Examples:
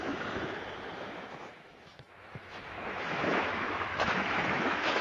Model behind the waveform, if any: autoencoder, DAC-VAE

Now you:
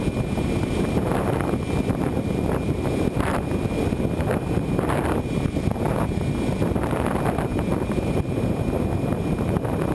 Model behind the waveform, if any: vocoder, BigVGAN v2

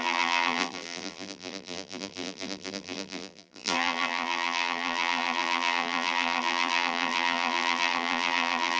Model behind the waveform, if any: vocoder, BigVGAN v2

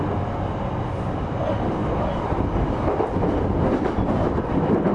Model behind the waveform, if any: none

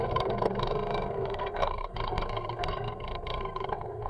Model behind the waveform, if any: codec, SNAC